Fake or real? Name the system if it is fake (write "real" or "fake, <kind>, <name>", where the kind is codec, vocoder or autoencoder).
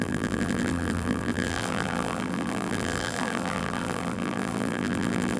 fake, vocoder, BigVGAN v2